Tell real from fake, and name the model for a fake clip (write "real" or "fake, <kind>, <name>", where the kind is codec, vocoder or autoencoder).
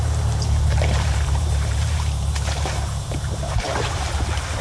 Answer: fake, vocoder, BigVGAN v2